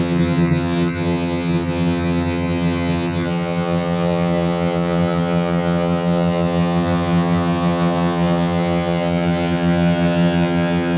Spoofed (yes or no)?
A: yes